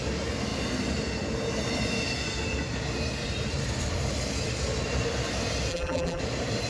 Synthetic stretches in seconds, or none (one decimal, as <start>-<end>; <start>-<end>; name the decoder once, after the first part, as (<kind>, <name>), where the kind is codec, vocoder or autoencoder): 5.7-6.2 (vocoder, BigVGAN v2)

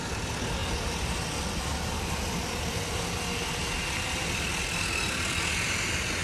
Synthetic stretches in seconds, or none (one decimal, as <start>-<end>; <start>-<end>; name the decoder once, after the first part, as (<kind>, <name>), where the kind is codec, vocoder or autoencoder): none

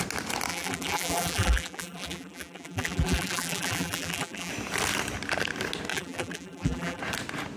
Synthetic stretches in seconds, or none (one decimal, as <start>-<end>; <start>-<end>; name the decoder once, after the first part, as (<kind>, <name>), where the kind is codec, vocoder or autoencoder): 0.5-4.5 (vocoder, BigVGAN v2); 5.9-7.0

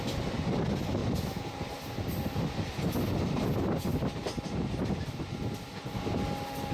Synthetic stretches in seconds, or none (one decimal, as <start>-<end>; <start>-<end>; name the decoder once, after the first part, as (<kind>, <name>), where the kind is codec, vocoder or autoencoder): none